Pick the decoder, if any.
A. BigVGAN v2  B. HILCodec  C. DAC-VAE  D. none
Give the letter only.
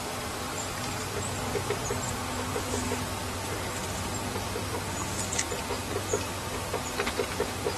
D